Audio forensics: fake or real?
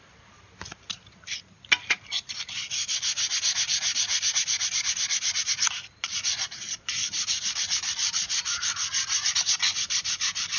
real